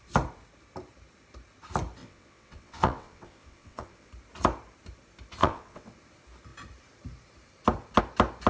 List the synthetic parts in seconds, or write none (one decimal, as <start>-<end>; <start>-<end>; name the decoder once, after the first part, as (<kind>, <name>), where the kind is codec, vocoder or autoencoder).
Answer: 2.0-4.1 (vocoder, WaveNeXt); 5.4-5.9